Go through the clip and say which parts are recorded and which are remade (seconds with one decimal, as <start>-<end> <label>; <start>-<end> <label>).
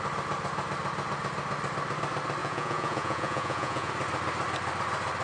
0.0-2.4 recorded; 2.4-3.9 remade; 3.9-5.2 recorded